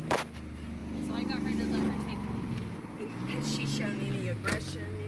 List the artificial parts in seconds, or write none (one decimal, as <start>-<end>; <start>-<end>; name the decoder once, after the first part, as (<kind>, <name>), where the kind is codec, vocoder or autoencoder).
none

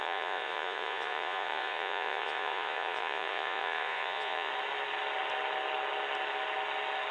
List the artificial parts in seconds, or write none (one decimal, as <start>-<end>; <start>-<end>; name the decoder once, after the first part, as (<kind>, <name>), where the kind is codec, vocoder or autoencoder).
0.0-4.5 (vocoder, Vocos)

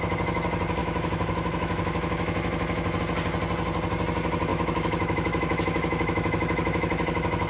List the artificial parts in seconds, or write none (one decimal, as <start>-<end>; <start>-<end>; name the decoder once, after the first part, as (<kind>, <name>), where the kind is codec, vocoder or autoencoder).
0.8-3.0 (autoencoder, DAC-VAE); 4.5-7.5

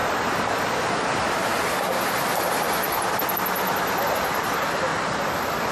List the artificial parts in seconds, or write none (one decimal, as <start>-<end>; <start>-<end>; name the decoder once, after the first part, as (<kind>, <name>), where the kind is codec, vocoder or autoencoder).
0.0-0.6 (vocoder, BigVGAN v2); 4.9-5.7

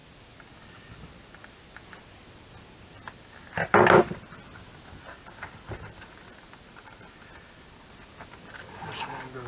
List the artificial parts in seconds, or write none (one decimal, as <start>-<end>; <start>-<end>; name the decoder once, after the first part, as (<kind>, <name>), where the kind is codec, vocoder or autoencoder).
none

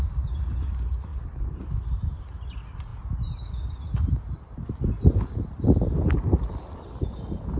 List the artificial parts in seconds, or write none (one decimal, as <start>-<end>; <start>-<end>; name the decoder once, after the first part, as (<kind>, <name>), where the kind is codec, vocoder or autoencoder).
none